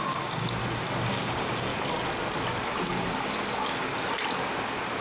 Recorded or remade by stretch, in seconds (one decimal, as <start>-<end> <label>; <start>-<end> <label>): 0.0-0.6 remade; 0.6-1.1 recorded; 1.1-1.7 remade; 1.7-5.0 recorded